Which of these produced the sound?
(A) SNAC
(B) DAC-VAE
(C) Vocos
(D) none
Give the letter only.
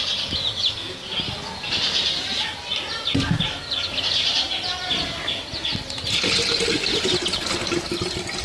D